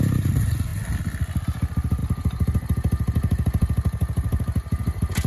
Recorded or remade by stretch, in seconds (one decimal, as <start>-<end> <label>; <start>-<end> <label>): 0.0-5.3 recorded